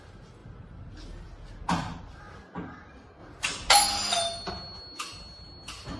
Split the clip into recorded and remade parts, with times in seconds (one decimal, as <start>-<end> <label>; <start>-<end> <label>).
0.0-6.0 recorded